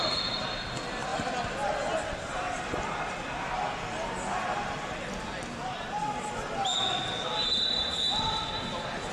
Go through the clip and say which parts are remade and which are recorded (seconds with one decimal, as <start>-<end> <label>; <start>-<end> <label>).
0.0-9.1 recorded